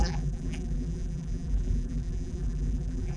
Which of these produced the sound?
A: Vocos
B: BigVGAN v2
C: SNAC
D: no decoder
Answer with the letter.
B